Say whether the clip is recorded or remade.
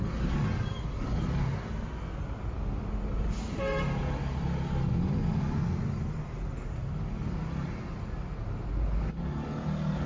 recorded